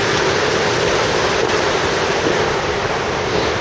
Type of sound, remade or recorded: recorded